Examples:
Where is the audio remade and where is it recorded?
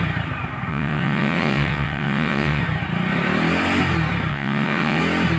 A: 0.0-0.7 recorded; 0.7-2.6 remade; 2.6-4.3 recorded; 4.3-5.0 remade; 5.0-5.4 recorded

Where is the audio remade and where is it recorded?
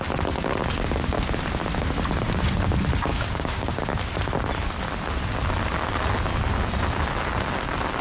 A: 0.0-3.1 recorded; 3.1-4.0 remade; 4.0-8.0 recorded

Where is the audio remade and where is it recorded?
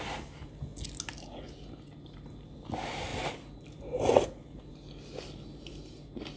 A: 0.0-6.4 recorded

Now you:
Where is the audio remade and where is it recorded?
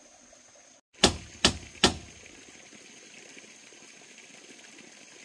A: 0.0-5.2 recorded